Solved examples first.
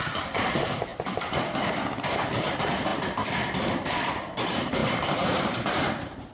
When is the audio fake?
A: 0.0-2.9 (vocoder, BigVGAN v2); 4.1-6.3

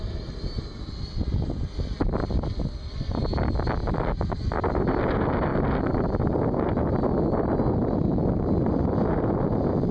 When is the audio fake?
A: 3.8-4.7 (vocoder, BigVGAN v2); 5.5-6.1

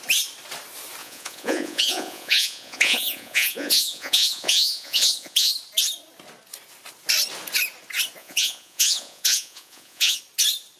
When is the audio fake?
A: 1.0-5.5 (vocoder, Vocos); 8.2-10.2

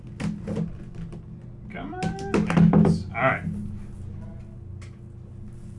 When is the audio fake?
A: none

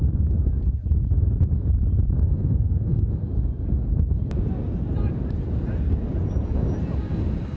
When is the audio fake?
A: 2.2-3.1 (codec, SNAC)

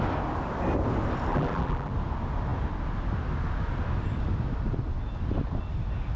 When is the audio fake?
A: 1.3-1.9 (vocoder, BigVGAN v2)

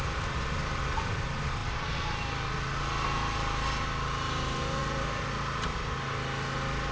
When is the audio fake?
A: none